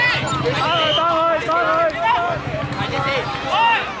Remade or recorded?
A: recorded